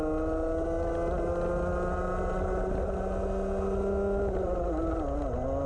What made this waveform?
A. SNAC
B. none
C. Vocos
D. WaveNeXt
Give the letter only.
B